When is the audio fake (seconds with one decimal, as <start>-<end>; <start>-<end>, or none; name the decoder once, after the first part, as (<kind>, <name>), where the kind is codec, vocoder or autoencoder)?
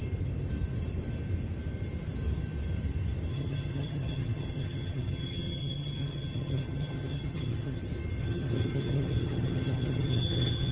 3.3-7.8 (vocoder, HiFi-GAN); 8.2-10.7